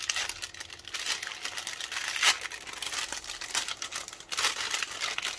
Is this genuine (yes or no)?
yes